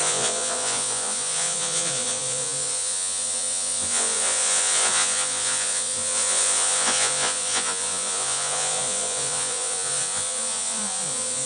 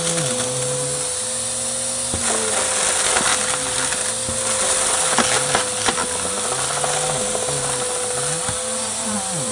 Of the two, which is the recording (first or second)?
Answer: second